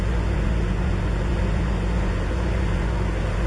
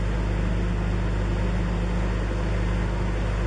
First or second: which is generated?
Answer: first